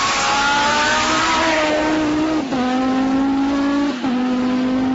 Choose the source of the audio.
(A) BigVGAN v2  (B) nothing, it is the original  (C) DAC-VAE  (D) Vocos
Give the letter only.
B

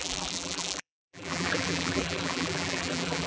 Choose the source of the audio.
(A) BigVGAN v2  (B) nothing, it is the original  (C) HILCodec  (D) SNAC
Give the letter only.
A